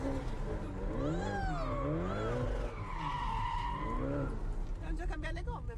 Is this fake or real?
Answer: real